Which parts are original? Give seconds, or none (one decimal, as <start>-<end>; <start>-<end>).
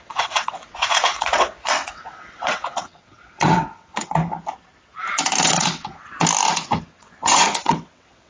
4.2-5.4; 6.1-6.8